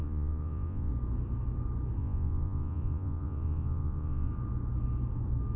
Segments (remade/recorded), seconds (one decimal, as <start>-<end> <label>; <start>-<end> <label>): 0.0-0.9 remade; 0.9-2.0 recorded; 2.0-4.3 remade; 4.3-5.6 recorded